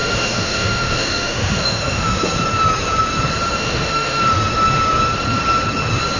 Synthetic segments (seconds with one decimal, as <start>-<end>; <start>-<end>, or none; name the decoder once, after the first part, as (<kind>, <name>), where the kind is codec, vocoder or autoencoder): 0.0-2.3 (autoencoder, DAC-VAE); 3.6-4.2